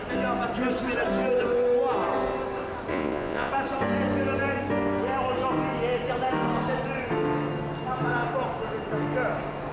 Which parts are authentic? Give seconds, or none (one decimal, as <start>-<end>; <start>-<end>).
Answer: 0.0-2.9; 3.5-9.7